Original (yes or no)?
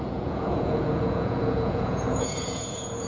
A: no